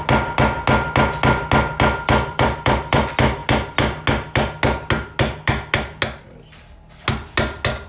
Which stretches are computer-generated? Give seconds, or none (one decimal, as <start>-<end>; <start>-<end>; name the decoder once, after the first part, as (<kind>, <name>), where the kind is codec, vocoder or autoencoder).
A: 2.3-3.0 (vocoder, BigVGAN v2)